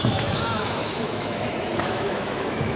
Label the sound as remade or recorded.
remade